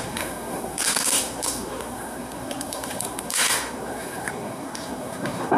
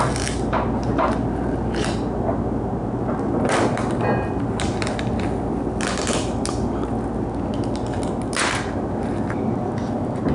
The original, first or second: second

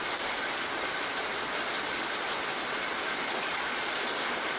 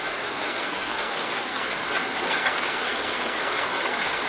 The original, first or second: first